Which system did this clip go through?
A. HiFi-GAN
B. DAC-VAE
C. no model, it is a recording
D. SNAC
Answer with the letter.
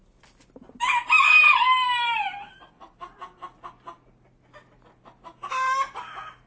C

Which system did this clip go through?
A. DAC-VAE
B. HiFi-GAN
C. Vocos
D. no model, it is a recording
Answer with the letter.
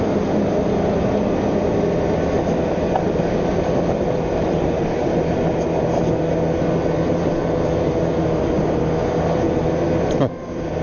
D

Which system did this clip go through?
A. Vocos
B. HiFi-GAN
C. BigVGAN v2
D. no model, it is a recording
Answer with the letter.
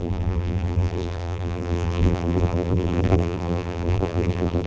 C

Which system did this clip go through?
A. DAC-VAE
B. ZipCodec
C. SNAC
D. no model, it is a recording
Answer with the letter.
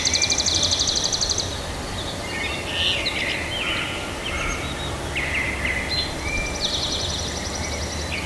D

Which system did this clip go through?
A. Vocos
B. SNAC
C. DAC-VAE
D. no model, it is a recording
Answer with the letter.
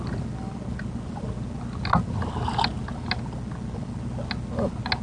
D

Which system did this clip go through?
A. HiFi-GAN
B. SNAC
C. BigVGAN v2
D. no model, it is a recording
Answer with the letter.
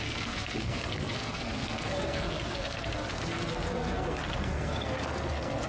B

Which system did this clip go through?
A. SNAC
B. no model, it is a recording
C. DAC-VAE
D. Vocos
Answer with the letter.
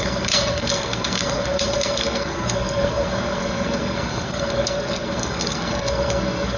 A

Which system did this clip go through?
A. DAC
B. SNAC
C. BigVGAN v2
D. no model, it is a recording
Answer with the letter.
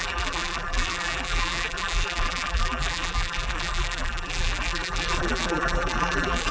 C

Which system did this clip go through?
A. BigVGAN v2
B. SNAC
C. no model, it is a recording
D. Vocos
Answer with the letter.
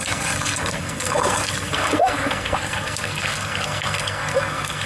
B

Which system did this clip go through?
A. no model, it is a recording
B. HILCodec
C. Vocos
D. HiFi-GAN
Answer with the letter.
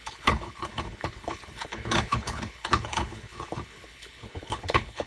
B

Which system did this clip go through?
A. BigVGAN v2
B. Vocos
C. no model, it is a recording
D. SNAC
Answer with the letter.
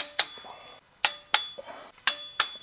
C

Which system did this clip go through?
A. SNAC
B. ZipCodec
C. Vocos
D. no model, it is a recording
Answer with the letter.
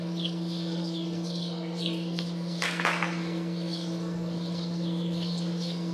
A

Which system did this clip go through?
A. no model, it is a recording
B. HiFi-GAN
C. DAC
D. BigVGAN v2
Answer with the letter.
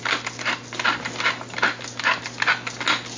A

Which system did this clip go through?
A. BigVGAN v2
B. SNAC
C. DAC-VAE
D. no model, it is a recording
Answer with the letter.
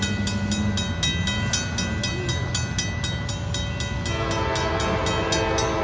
D